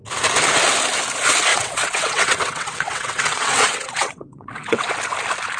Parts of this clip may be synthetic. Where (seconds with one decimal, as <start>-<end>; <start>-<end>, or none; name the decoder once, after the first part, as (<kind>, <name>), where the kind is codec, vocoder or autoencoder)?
1.5-4.9 (vocoder, WaveNeXt)